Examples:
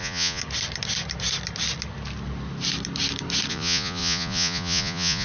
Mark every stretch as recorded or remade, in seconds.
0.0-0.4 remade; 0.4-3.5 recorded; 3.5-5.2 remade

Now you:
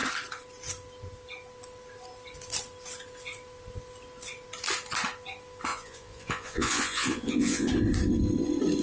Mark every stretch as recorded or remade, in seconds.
0.0-5.7 recorded; 5.7-7.7 remade; 7.7-8.8 recorded

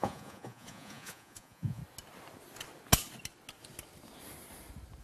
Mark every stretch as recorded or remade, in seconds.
0.0-1.8 remade; 1.8-5.0 recorded

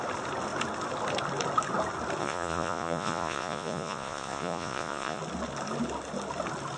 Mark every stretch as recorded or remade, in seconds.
0.0-2.2 recorded; 2.2-5.2 remade; 5.2-6.8 recorded

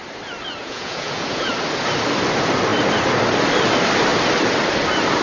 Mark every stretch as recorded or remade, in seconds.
0.0-0.6 recorded; 0.6-1.5 remade; 1.5-5.2 recorded